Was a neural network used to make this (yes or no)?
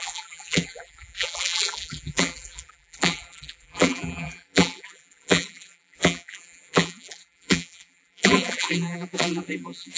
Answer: yes